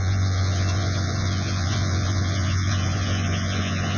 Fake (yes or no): yes